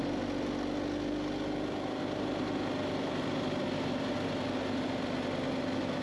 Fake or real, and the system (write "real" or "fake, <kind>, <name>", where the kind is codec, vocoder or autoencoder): real